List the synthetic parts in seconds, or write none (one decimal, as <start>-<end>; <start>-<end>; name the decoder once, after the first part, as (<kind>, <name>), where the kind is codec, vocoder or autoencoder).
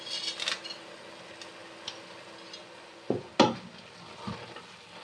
2.6-3.3 (vocoder, Vocos)